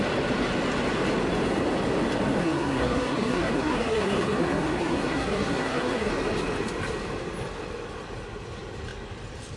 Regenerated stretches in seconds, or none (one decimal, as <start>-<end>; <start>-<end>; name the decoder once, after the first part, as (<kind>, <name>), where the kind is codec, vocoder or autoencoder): 2.4-6.1 (codec, SNAC)